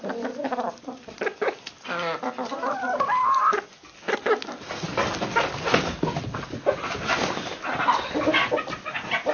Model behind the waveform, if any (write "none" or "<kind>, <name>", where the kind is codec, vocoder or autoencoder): none